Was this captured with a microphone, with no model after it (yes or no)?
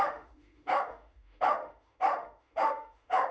no